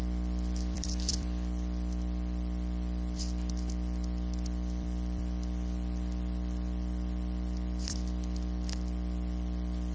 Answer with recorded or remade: remade